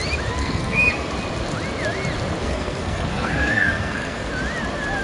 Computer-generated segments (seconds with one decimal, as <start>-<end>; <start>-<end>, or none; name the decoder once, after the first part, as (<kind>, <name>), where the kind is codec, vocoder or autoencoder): 0.4-1.1 (codec, SNAC); 2.4-4.3